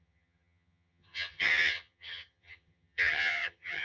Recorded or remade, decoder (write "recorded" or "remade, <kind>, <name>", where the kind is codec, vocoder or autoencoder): remade, vocoder, HiFi-GAN